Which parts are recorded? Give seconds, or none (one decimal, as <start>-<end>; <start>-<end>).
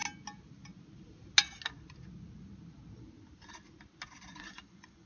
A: 0.0-4.3